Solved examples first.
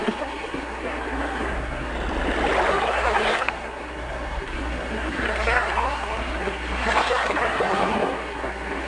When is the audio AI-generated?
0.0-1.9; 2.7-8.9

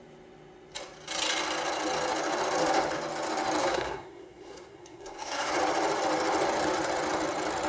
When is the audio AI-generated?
3.6-5.5